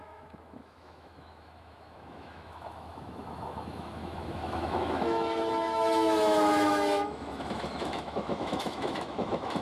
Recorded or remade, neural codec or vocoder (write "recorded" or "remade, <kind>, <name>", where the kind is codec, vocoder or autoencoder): remade, autoencoder, DAC-VAE